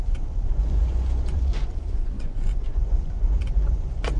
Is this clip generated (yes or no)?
yes